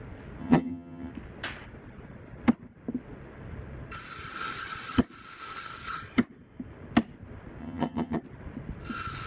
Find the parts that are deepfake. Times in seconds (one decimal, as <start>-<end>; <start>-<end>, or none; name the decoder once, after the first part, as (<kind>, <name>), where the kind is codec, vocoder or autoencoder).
0.4-1.1 (vocoder, HiFi-GAN); 7.6-8.2